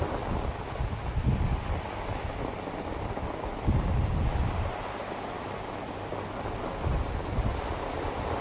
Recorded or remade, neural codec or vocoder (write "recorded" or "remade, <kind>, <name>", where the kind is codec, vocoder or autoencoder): recorded